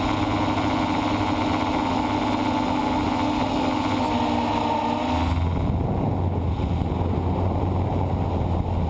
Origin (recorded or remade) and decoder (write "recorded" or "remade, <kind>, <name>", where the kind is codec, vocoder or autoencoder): recorded